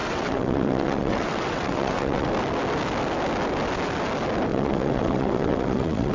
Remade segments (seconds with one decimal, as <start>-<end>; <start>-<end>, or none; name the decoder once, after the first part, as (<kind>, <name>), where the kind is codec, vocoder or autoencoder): 0.0-2.3 (vocoder, WaveNeXt); 4.5-6.1

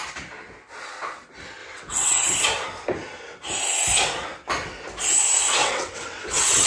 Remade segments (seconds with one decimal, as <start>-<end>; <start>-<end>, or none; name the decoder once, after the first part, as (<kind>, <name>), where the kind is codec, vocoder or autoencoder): 1.6-2.3 (vocoder, WaveNeXt); 5.6-6.7

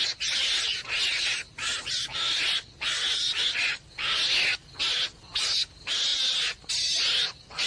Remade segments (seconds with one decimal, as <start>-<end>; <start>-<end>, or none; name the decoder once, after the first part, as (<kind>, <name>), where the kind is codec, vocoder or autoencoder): none

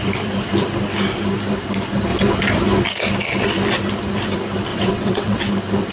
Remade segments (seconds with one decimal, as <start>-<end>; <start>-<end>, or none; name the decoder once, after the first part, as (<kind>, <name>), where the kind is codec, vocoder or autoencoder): 4.7-5.4 (vocoder, WaveNeXt)

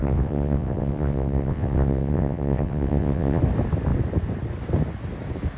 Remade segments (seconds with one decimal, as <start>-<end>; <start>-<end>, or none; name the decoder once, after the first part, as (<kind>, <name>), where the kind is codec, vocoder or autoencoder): 0.0-3.4 (vocoder, WaveNeXt)